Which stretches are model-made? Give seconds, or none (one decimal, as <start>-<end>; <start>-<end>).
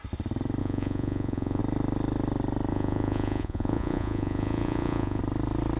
0.6-1.6; 2.7-5.2